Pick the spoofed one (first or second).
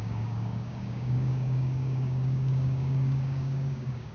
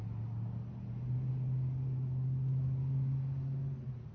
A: first